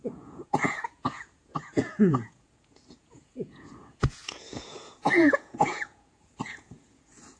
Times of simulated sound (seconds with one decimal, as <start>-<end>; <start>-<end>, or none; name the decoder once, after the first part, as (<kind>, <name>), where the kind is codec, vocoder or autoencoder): 0.0-7.4 (vocoder, Vocos)